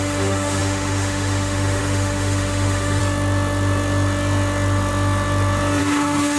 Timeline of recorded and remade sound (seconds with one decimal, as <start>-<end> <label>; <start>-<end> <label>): 0.0-3.0 remade; 3.0-5.8 recorded; 5.8-6.4 remade